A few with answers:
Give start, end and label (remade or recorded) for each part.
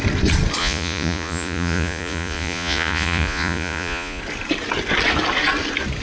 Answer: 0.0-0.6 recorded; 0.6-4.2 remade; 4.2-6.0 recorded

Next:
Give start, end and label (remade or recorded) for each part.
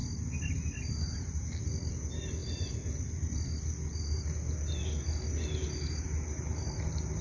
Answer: 0.0-7.2 recorded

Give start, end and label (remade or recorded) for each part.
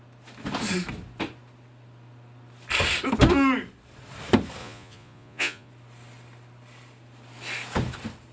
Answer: 0.0-4.6 recorded; 4.6-5.7 remade; 5.7-8.3 recorded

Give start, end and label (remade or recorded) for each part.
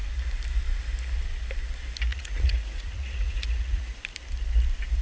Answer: 0.0-2.1 recorded; 2.1-4.0 remade; 4.0-5.0 recorded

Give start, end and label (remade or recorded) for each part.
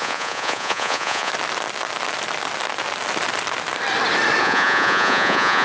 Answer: 0.0-1.3 remade; 1.3-4.4 recorded; 4.4-5.6 remade